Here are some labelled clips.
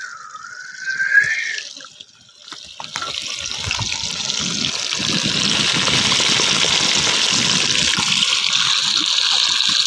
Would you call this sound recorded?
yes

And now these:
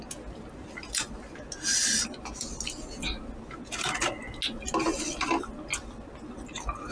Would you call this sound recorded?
yes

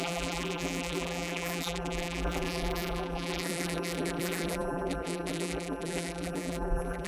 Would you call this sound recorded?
no